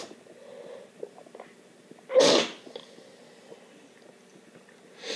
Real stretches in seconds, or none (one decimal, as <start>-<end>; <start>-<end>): 0.0-5.2